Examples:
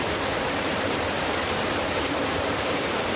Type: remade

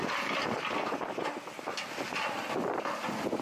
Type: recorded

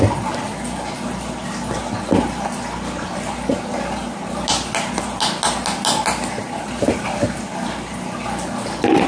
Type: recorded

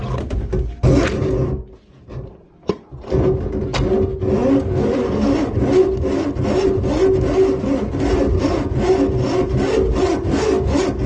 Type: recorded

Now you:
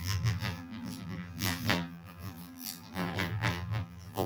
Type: remade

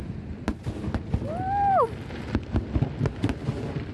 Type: recorded